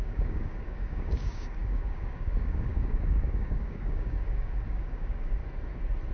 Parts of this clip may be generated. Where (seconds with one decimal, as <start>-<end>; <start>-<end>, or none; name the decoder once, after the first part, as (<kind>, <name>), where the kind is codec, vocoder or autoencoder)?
0.0-5.4 (codec, DAC)